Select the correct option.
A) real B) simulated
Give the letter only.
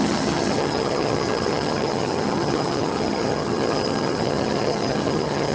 B